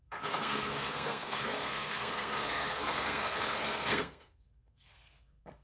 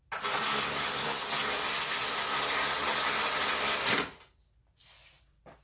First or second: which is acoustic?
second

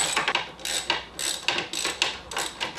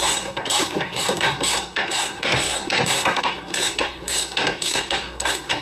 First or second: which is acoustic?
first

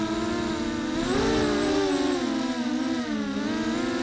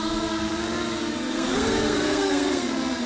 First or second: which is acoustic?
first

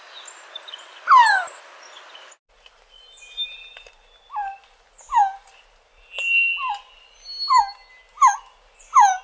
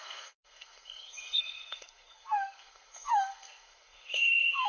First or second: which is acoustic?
first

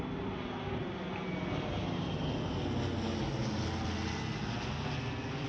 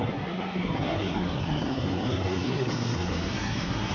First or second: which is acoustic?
first